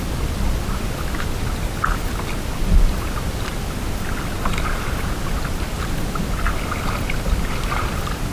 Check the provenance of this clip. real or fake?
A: real